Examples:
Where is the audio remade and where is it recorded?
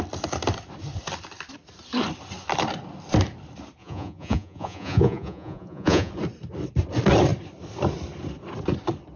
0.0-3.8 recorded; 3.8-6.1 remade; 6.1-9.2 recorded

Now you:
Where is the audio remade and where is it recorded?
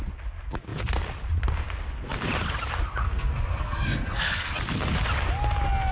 0.0-3.0 recorded; 3.0-4.5 remade; 4.5-5.9 recorded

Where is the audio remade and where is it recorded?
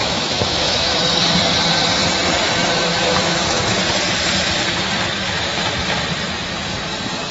0.0-1.2 remade; 1.2-2.9 recorded; 2.9-3.8 remade; 3.8-7.3 recorded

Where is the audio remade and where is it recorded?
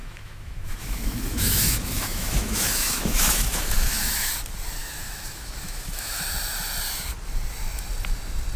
0.0-4.3 remade; 4.3-4.8 recorded; 4.8-6.2 remade; 6.2-8.6 recorded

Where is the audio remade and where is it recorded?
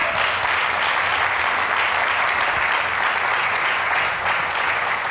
0.0-3.4 recorded; 3.4-5.1 remade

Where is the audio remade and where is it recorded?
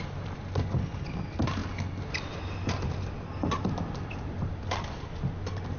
0.0-5.8 recorded